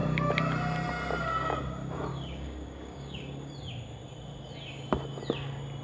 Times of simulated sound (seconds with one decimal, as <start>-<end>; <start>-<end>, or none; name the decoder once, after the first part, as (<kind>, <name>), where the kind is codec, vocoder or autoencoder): 2.1-3.5 (codec, DAC)